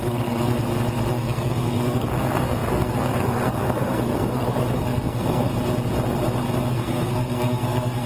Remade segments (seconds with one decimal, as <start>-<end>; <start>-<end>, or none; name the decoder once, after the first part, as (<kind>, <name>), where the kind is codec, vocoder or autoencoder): 0.0-0.5 (codec, SNAC); 1.1-5.5; 6.7-8.1